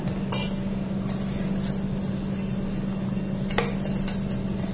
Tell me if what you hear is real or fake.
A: real